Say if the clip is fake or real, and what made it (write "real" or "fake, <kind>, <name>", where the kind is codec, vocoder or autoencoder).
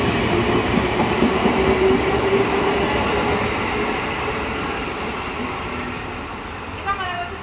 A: real